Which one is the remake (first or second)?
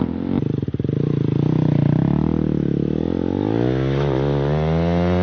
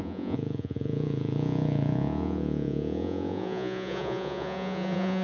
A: second